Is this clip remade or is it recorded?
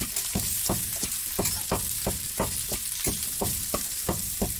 remade